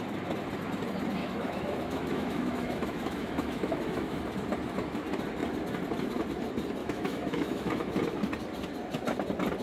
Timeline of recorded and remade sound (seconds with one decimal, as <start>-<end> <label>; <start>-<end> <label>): 0.0-1.2 recorded; 1.2-4.2 remade; 4.2-6.8 recorded; 6.8-8.0 remade; 8.0-9.6 recorded